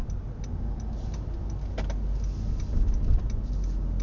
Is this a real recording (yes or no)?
yes